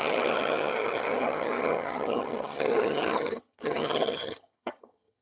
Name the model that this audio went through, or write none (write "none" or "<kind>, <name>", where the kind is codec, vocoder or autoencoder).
vocoder, HiFi-GAN